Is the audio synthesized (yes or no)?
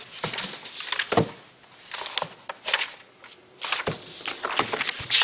no